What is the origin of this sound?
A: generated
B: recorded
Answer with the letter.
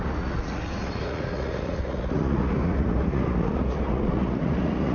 A